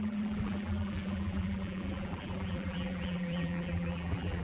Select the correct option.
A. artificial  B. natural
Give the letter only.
A